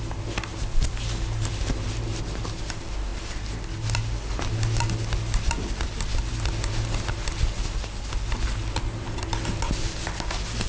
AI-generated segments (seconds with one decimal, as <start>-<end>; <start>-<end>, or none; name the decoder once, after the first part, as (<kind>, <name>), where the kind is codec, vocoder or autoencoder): none